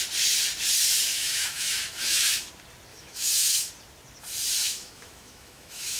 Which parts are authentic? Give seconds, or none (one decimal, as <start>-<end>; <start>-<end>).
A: 0.0-1.1; 2.5-2.9; 3.7-4.6